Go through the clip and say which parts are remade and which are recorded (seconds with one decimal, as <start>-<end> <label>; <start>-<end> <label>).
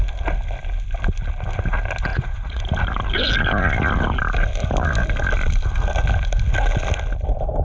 0.0-2.1 recorded; 2.1-2.6 remade; 2.6-7.6 recorded